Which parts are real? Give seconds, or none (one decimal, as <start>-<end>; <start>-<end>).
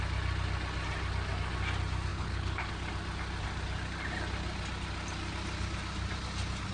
0.0-2.1; 2.7-6.7